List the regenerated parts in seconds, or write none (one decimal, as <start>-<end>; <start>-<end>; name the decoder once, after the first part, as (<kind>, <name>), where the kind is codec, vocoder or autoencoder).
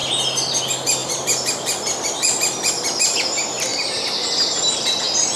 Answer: 1.0-3.0 (vocoder, BigVGAN v2); 3.7-4.7